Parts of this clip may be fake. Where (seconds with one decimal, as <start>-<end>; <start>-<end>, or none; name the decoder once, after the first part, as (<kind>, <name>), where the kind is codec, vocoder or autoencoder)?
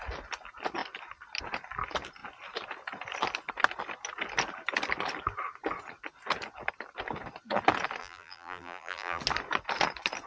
8.0-9.2 (vocoder, BigVGAN v2)